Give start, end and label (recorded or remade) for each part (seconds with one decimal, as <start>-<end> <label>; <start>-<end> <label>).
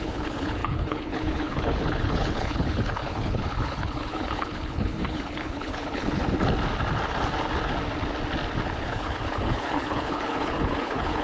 0.0-6.2 remade; 6.2-8.8 recorded; 8.8-11.2 remade